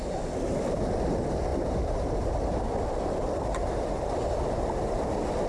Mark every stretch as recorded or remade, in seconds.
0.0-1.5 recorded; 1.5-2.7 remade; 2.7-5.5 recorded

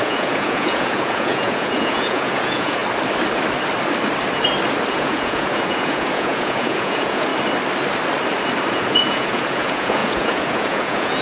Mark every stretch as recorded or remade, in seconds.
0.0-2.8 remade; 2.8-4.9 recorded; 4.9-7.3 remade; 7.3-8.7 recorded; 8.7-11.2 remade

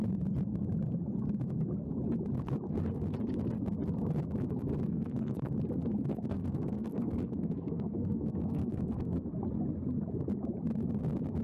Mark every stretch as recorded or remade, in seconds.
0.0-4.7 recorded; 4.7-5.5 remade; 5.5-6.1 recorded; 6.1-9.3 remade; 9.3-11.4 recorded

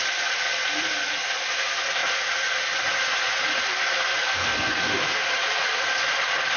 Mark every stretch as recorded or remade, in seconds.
0.0-4.2 recorded; 4.2-4.9 remade; 4.9-6.6 recorded

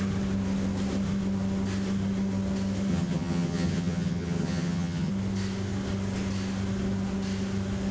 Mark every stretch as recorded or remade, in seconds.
0.0-2.9 recorded; 2.9-5.1 remade; 5.1-7.9 recorded

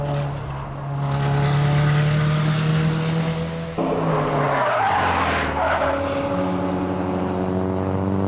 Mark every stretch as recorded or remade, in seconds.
0.0-8.3 recorded

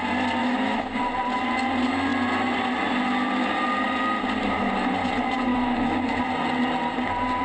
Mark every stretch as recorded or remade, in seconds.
0.0-0.4 recorded; 0.4-1.0 remade; 1.0-5.5 recorded; 5.5-6.1 remade; 6.1-7.4 recorded